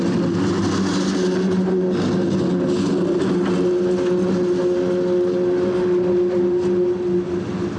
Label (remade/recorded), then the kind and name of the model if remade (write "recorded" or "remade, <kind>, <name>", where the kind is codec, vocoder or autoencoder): recorded